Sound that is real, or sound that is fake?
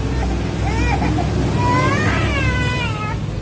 real